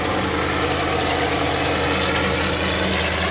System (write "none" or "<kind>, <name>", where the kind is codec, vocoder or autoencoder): none